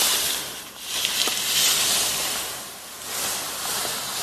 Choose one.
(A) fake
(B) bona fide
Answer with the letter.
B